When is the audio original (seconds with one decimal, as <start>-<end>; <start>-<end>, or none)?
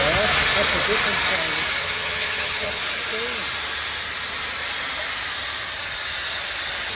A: 0.0-1.8; 2.8-6.9